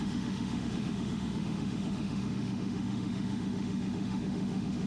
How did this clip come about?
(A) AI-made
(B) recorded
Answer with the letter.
A